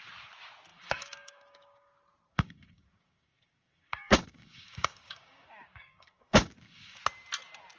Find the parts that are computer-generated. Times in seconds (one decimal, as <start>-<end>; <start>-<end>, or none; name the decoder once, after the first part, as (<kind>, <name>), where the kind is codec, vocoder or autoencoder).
0.7-1.9 (codec, DAC); 2.3-7.0